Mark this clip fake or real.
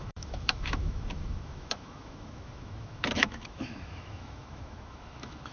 fake